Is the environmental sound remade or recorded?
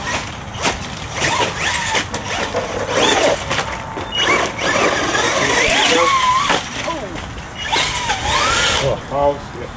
recorded